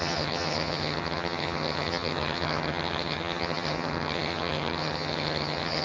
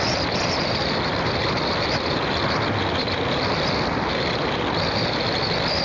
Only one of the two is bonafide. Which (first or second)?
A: second